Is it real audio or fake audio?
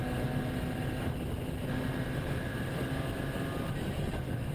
real